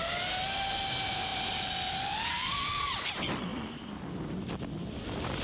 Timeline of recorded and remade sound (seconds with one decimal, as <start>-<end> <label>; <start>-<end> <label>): 0.0-2.3 recorded; 2.3-2.9 remade; 2.9-5.4 recorded